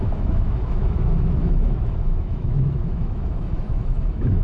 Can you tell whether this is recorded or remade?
remade